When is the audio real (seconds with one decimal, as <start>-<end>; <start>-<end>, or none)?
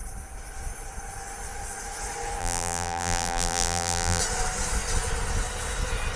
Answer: 0.0-2.4; 4.2-6.2